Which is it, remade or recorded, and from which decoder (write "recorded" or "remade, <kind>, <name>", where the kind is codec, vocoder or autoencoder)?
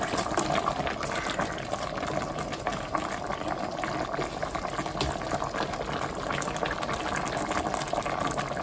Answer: recorded